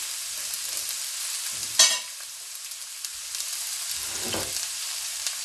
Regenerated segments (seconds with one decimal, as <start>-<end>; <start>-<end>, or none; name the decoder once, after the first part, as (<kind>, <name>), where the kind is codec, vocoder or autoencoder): none